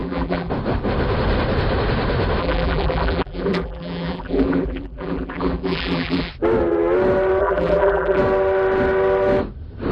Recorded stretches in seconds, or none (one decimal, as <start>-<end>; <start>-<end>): 0.5-2.4; 6.3-7.4; 8.2-9.9